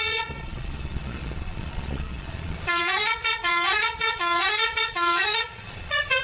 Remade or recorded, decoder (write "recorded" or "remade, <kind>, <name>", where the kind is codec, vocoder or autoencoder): remade, vocoder, Vocos